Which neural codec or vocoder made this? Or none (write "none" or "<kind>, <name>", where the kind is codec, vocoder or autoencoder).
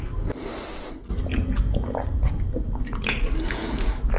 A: none